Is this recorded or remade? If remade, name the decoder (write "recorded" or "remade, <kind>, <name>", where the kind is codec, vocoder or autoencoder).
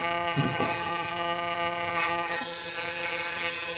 remade, vocoder, HiFi-GAN